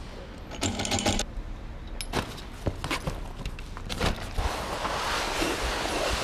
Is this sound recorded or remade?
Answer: recorded